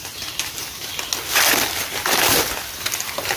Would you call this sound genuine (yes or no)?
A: yes